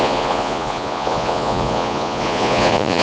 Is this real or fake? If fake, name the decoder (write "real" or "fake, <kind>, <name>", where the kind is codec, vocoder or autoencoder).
fake, vocoder, Vocos